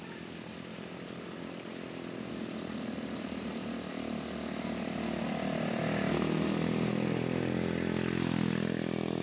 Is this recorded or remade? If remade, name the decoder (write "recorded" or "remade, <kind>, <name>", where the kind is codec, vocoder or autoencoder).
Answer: recorded